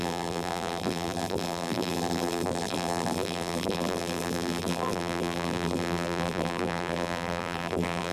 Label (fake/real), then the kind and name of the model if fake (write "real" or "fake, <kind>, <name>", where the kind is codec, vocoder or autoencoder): fake, vocoder, BigVGAN v2